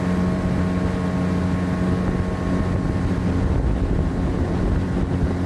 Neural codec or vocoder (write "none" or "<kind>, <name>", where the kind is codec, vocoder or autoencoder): none